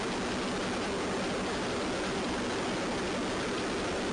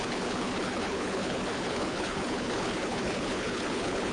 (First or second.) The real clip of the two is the first